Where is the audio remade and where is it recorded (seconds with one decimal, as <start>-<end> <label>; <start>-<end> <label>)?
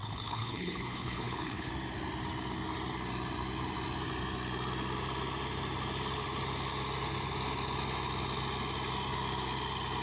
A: 0.0-1.7 remade; 1.7-10.0 recorded